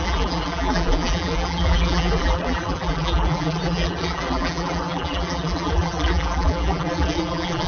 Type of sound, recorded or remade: remade